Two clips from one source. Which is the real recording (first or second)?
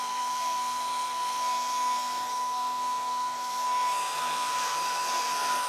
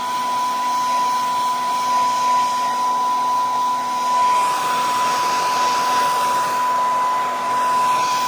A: second